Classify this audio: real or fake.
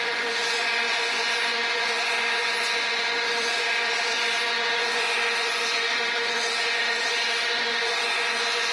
fake